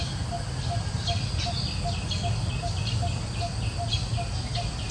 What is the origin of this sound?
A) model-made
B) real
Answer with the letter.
B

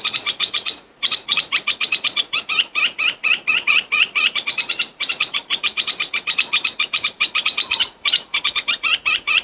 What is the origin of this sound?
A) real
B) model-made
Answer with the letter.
B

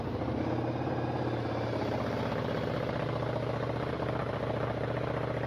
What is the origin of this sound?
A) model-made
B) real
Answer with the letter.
B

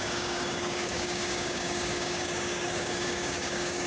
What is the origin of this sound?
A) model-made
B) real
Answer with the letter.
A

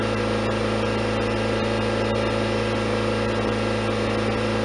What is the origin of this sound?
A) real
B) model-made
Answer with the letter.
A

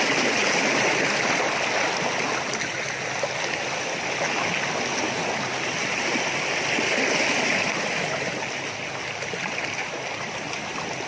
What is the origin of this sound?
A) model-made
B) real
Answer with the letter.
B